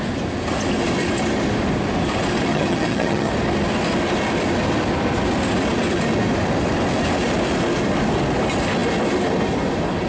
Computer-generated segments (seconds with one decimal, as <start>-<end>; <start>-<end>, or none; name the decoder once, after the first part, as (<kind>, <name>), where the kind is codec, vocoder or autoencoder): 2.5-3.3 (vocoder, HiFi-GAN)